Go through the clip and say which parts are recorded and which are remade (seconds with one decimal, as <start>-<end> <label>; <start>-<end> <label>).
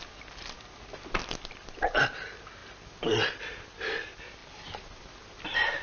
0.0-5.8 recorded